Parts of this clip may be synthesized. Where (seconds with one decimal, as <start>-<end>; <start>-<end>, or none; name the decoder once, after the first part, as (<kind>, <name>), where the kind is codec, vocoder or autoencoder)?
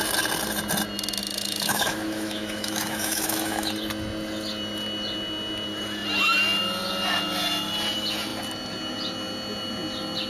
1.2-3.7 (autoencoder, DAC-VAE)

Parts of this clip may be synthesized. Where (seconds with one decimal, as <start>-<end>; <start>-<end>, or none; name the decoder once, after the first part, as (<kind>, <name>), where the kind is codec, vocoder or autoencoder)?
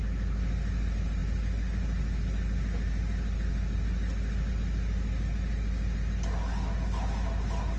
none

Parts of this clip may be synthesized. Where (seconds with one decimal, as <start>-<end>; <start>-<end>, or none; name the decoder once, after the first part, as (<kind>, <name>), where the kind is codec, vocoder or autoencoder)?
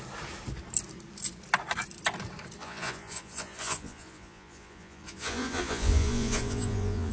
2.6-7.1 (vocoder, Vocos)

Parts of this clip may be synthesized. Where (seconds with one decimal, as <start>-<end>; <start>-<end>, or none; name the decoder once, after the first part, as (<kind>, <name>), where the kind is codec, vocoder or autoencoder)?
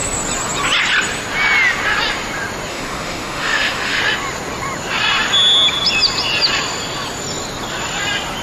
2.7-4.0 (autoencoder, DAC-VAE)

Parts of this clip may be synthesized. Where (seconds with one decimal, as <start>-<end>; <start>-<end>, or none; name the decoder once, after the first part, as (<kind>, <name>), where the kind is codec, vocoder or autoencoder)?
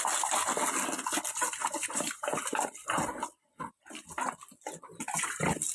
1.6-2.4 (vocoder, BigVGAN v2)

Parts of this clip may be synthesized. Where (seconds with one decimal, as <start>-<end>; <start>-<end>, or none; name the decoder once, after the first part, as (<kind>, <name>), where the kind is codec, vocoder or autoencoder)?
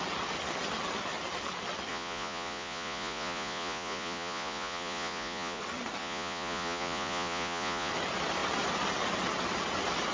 1.9-5.6 (vocoder, Vocos); 6.0-7.9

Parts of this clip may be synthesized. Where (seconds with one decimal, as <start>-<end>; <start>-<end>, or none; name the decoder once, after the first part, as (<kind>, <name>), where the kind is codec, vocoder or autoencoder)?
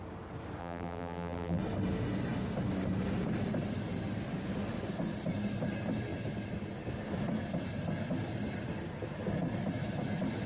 0.6-1.6 (vocoder, BigVGAN v2)